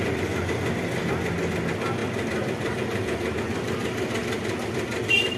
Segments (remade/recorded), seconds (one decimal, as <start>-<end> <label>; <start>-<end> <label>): 0.0-2.0 recorded; 2.0-5.4 remade